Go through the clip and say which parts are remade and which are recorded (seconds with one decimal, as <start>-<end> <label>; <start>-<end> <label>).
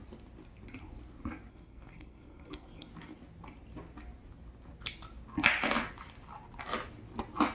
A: 0.0-1.5 recorded; 1.5-2.9 remade; 2.9-7.5 recorded